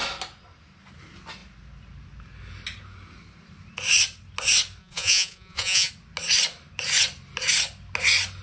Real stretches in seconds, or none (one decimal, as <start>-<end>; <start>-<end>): 0.0-4.8; 5.9-8.4